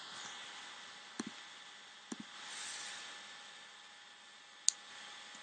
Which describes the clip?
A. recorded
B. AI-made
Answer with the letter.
A